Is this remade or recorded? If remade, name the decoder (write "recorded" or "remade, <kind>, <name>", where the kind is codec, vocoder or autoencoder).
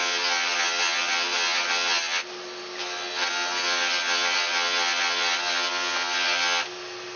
recorded